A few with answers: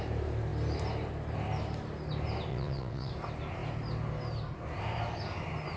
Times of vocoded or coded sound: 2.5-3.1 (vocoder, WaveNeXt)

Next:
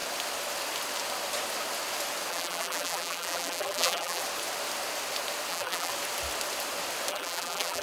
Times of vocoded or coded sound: 2.3-4.2 (vocoder, BigVGAN v2); 5.5-5.9; 7.1-7.8

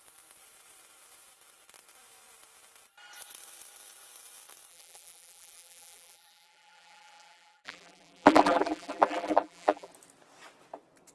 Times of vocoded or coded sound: 4.7-9.9 (vocoder, BigVGAN v2)

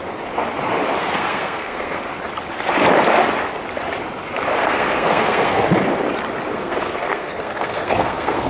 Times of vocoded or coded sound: 1.0-2.0 (codec, SNAC); 4.6-5.6; 6.5-8.5